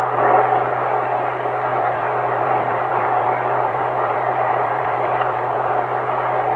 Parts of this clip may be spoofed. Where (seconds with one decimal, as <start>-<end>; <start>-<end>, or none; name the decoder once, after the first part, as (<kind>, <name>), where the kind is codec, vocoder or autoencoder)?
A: 1.7-5.7 (vocoder, BigVGAN v2)